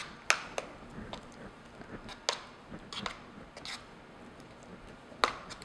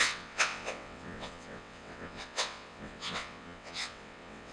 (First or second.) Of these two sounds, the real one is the first